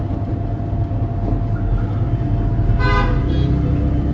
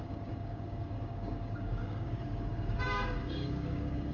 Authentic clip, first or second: first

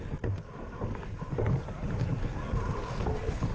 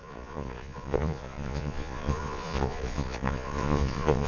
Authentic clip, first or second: first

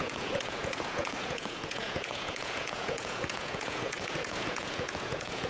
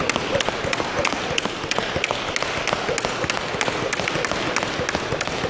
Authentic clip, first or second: second